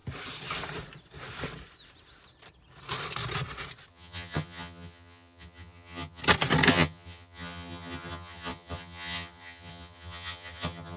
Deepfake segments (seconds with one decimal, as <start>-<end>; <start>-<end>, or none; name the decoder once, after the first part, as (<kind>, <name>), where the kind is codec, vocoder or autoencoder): 3.9-6.2 (vocoder, HiFi-GAN); 6.7-11.0